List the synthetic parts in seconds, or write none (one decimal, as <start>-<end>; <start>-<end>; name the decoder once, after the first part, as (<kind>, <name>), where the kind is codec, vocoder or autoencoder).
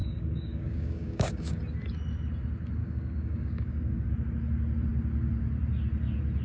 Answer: 0.0-1.6 (codec, DAC); 2.8-4.1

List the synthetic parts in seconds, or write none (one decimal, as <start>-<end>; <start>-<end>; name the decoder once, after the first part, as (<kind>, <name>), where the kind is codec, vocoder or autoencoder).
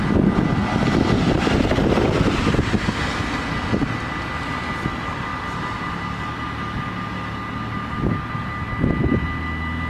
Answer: none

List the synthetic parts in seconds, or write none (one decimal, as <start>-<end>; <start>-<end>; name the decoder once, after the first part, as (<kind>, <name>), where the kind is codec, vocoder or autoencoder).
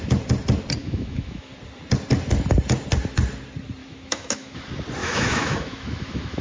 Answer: 0.8-1.5 (autoencoder, DAC-VAE); 3.8-4.6; 5.0-6.4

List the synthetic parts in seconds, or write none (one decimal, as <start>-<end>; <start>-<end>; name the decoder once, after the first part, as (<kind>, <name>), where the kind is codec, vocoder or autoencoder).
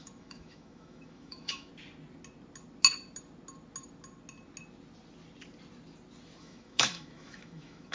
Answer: 0.0-1.7 (autoencoder, DAC-VAE); 6.4-7.9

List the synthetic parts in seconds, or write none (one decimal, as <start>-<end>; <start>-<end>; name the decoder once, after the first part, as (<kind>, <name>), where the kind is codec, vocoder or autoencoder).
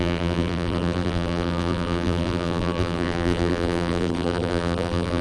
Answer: 0.0-5.2 (vocoder, BigVGAN v2)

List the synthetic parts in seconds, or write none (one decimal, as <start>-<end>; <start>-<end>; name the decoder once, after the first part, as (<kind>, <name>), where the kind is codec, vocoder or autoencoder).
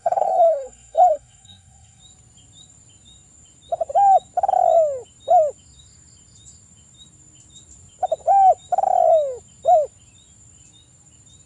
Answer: 0.0-2.0 (codec, SNAC)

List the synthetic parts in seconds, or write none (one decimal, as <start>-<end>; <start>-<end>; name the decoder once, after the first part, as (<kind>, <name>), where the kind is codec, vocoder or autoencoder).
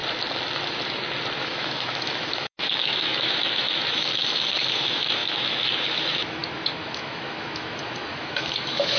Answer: 1.4-9.0 (autoencoder, DAC-VAE)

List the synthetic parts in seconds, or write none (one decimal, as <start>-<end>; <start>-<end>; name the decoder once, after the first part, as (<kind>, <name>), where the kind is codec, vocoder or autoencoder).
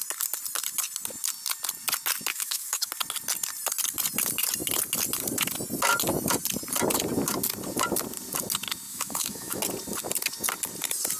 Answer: 2.3-2.9 (autoencoder, DAC-VAE); 8.9-9.6